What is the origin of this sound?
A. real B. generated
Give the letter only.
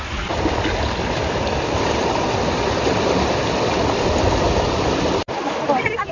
A